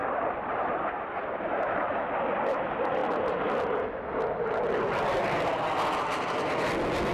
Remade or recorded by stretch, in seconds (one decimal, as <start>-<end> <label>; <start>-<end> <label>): 0.0-0.8 remade; 0.8-7.1 recorded

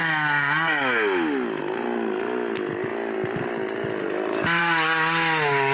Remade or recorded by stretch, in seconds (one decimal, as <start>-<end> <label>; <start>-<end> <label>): 0.0-5.7 recorded

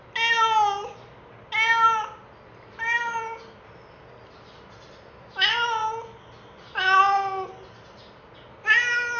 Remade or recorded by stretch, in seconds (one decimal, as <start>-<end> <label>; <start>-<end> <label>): 0.0-9.2 recorded

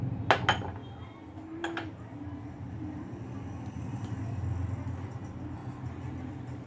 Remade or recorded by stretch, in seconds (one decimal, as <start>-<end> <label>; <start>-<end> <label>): 0.0-6.7 recorded

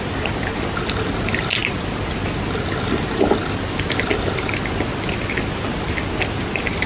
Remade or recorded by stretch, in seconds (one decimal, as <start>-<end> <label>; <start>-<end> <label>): 0.0-6.9 recorded

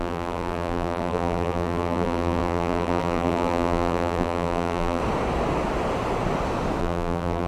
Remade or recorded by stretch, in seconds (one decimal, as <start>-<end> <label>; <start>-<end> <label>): 0.0-5.0 remade; 5.0-6.8 recorded; 6.8-7.5 remade

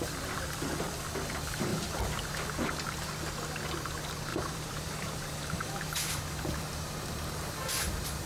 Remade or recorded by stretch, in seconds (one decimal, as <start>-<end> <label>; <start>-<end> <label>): 0.0-1.7 recorded; 1.7-2.3 remade; 2.3-4.3 recorded; 4.3-6.6 remade; 6.6-8.3 recorded

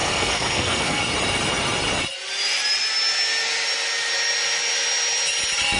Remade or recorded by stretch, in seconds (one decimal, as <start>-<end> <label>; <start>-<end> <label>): 0.0-1.0 remade; 1.0-5.8 recorded